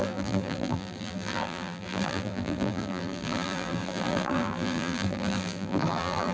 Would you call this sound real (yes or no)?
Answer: no